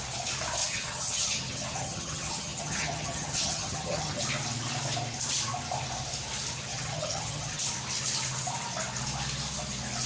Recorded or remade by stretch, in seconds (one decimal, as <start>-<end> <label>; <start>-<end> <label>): 0.0-0.6 recorded; 0.6-4.2 remade; 4.2-6.7 recorded; 6.7-7.6 remade; 7.6-10.1 recorded